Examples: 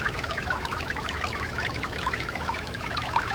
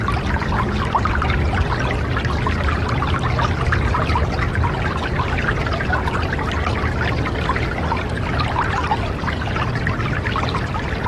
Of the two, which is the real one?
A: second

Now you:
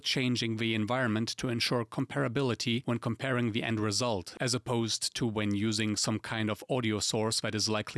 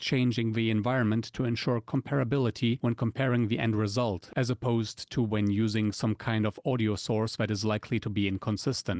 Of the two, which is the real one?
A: first